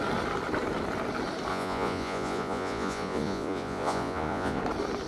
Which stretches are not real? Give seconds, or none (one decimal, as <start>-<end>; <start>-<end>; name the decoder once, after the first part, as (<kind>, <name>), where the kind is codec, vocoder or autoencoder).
1.5-4.6 (vocoder, Vocos)